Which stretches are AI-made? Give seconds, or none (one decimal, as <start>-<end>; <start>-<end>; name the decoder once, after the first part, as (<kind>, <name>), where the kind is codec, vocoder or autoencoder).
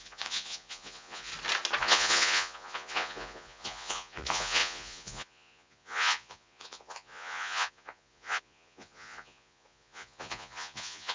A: 0.0-1.3 (vocoder, Vocos); 1.8-11.1